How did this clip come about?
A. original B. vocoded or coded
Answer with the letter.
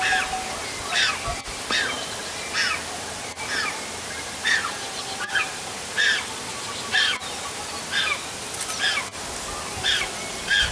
A